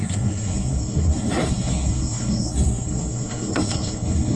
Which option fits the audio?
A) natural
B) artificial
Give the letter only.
B